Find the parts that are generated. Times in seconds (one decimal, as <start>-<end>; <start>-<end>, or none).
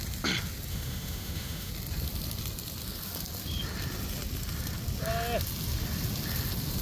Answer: 0.7-1.7